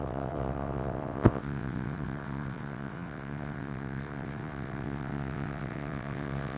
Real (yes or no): no